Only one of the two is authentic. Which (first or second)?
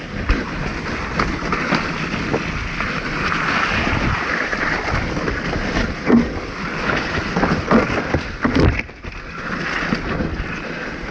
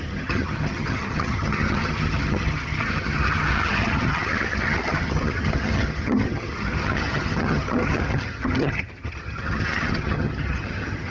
first